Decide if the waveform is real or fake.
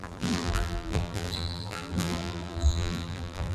fake